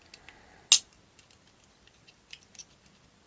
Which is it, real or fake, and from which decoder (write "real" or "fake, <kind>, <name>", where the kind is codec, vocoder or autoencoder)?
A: real